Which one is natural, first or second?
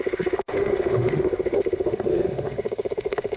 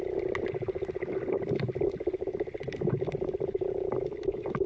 second